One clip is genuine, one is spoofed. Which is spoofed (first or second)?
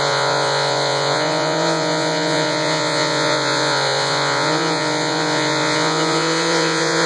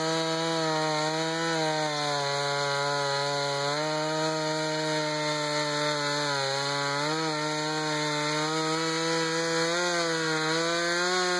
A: first